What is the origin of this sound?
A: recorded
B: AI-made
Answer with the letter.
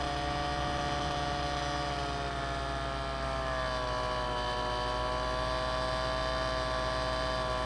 A